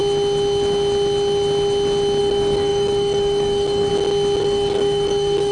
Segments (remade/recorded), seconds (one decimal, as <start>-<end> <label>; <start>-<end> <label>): 0.0-2.2 recorded; 2.2-3.9 remade; 3.9-4.4 recorded; 4.4-5.5 remade